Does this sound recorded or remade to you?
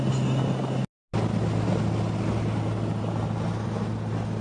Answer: recorded